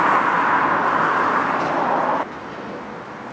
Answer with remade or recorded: recorded